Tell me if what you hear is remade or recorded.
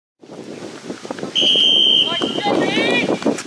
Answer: recorded